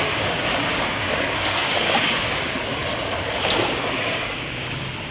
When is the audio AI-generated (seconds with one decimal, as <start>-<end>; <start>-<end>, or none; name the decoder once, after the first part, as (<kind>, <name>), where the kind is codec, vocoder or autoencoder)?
0.0-2.8 (codec, DAC); 3.6-5.1